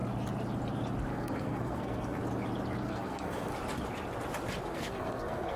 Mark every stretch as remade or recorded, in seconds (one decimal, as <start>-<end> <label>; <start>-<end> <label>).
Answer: 0.0-1.1 recorded; 1.1-2.2 remade; 2.2-2.8 recorded; 2.8-3.5 remade; 3.5-4.6 recorded; 4.6-5.6 remade